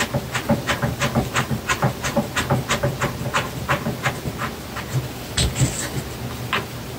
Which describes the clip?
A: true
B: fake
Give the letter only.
A